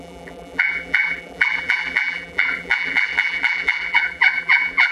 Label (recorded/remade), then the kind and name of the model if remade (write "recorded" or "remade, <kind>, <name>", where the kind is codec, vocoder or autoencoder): remade, vocoder, BigVGAN v2